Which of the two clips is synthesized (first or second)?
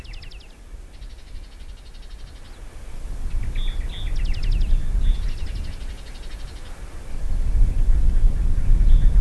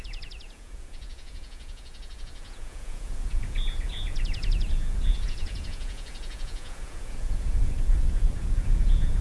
second